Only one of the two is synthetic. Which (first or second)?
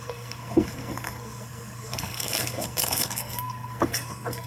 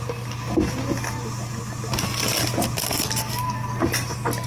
first